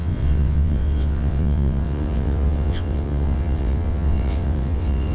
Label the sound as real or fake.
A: fake